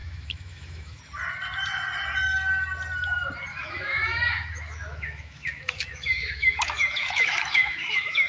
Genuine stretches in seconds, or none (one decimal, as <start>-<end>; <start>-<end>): 1.0-3.5